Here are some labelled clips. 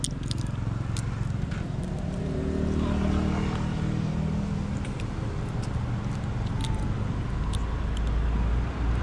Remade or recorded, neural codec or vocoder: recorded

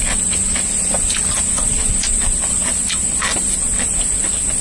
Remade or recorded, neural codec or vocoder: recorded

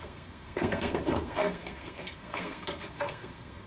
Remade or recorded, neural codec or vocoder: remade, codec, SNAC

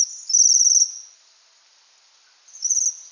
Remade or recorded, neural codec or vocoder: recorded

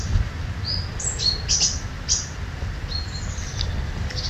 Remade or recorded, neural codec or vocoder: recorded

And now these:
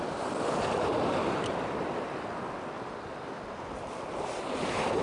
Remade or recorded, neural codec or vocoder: recorded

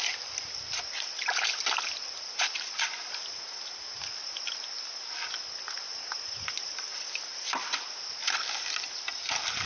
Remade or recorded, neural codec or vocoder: recorded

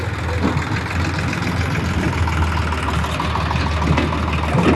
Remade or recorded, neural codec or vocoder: recorded